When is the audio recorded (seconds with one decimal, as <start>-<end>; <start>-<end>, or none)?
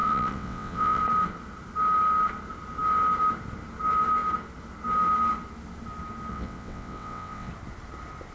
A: 1.0-6.3; 7.5-8.3